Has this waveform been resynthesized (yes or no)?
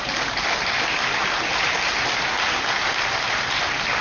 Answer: no